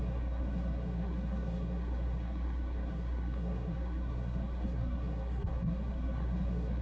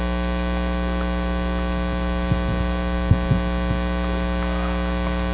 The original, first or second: second